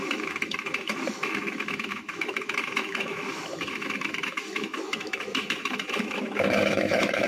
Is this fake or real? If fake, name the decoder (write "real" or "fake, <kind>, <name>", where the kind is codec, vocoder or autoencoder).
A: fake, autoencoder, DAC-VAE